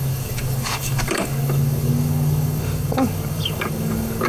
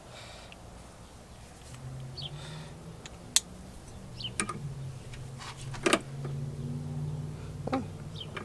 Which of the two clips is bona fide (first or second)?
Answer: second